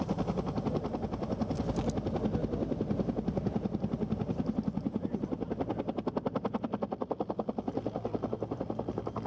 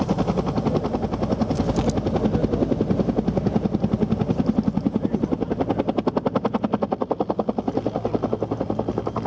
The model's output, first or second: first